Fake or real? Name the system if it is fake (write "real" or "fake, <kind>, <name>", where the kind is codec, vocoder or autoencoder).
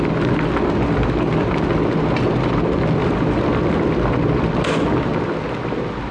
real